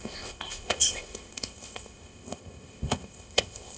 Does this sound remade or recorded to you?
remade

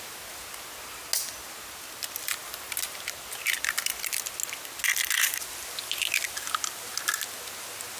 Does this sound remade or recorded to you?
recorded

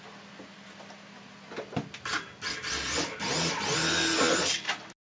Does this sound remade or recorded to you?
recorded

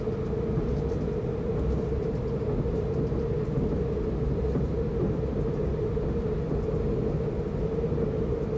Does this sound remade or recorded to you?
recorded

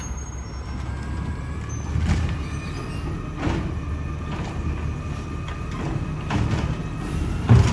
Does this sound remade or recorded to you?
recorded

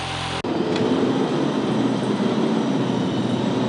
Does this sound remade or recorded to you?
recorded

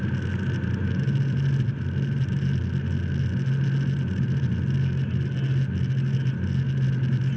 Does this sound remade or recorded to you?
recorded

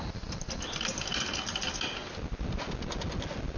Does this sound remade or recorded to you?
recorded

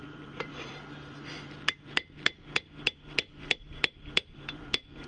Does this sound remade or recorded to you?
remade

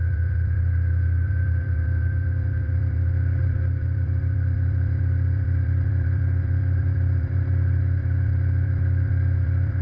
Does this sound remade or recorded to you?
remade